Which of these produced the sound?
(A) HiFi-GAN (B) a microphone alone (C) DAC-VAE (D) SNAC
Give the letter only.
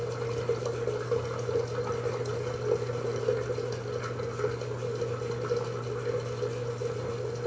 B